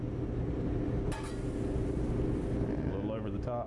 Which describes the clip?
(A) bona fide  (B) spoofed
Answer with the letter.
A